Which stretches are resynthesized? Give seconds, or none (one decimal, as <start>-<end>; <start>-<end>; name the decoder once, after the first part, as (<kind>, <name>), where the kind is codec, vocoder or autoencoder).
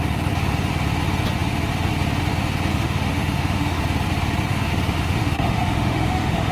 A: 2.7-3.8 (autoencoder, DAC-VAE); 4.5-6.5